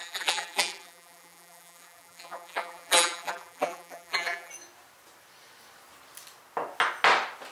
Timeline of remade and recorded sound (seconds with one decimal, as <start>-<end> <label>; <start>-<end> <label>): 0.0-4.5 remade; 4.5-7.5 recorded